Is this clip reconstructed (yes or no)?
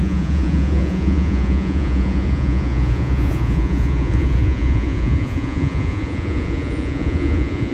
yes